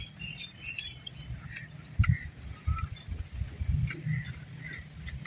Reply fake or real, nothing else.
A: real